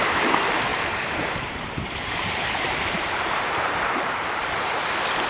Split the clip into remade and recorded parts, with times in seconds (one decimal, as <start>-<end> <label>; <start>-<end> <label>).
0.0-0.7 recorded; 0.7-3.9 remade; 3.9-5.3 recorded